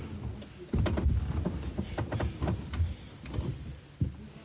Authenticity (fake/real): real